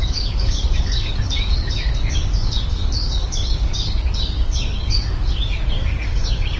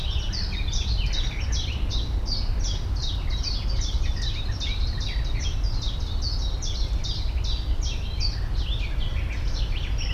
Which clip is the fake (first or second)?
first